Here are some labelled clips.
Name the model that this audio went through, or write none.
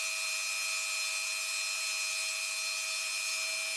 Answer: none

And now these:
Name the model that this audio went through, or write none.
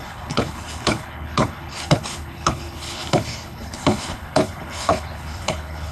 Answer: codec, HILCodec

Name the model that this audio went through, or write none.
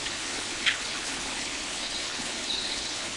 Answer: codec, HILCodec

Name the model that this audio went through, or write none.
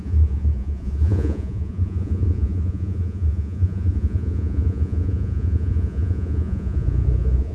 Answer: vocoder, Vocos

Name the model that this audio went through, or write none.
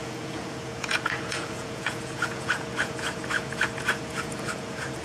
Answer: vocoder, Vocos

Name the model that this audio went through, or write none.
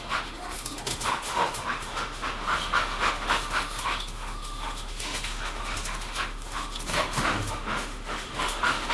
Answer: autoencoder, DAC-VAE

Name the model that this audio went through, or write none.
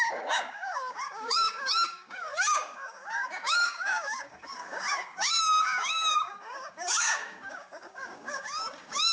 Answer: codec, DAC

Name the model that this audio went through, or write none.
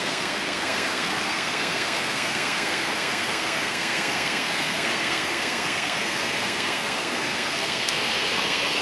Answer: codec, SNAC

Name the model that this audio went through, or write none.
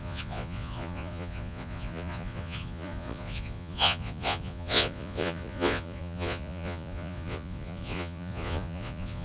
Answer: vocoder, Vocos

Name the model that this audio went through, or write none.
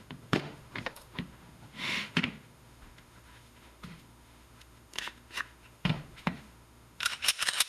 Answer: autoencoder, DAC-VAE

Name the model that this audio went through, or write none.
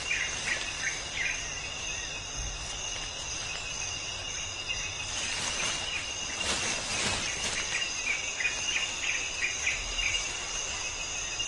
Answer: none